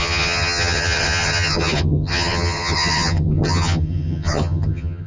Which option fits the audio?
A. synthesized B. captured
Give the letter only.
A